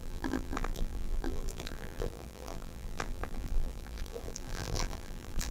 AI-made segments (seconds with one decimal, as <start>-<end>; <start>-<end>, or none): 0.0-5.5